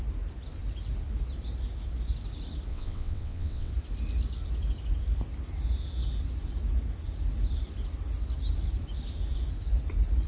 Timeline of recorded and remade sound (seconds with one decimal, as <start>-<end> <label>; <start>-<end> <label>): 0.0-2.7 recorded; 2.7-3.7 remade; 3.7-10.3 recorded